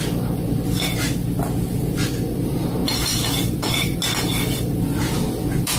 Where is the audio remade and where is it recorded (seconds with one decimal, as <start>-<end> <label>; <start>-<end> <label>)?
0.0-2.8 recorded; 2.8-4.8 remade; 4.8-5.8 recorded

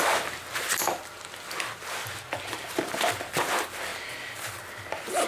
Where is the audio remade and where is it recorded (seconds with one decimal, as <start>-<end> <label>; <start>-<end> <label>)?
0.0-5.3 recorded

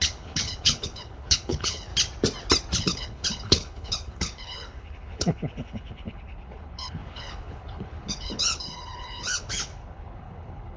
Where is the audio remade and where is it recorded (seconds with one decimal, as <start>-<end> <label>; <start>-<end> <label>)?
0.0-1.9 remade; 1.9-2.8 recorded; 2.8-10.8 remade

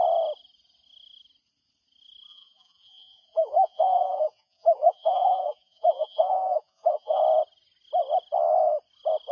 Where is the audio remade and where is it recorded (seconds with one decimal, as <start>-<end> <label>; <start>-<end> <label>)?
0.0-2.3 recorded; 2.3-7.2 remade; 7.2-9.3 recorded

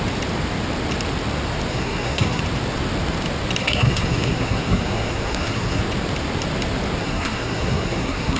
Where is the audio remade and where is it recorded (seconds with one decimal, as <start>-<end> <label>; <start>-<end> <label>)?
0.0-1.7 recorded; 1.7-2.4 remade; 2.4-3.6 recorded; 3.6-5.8 remade; 5.8-7.0 recorded; 7.0-8.4 remade

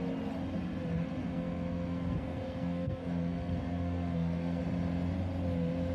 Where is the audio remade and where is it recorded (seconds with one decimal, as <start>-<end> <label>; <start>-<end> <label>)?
0.0-1.2 recorded; 1.2-4.6 remade; 4.6-5.9 recorded